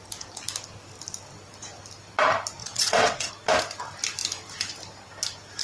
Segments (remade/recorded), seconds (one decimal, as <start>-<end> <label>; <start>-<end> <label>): 0.0-2.6 recorded; 2.6-3.3 remade; 3.3-5.6 recorded